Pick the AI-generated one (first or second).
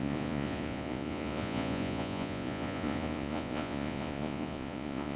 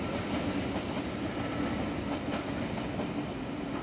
first